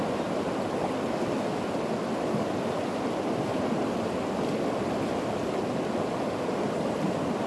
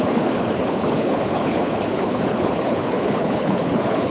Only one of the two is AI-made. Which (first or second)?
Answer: second